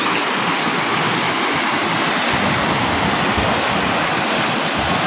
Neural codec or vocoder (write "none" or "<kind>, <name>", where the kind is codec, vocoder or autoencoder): none